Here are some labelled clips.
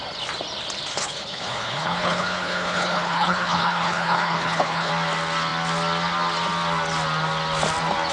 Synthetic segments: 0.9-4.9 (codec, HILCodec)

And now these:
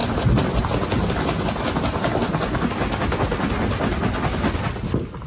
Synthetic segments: none

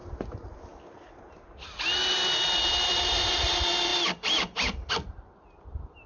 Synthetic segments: 2.7-6.1 (vocoder, BigVGAN v2)

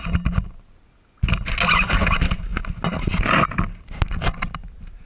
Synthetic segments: none

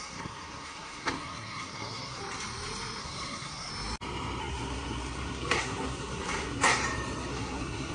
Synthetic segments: 0.0-2.2 (codec, SNAC); 3.0-3.7; 4.4-6.8; 7.3-7.9